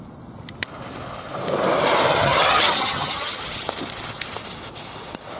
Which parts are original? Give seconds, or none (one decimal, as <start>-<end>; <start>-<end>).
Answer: 0.0-2.1; 3.4-5.4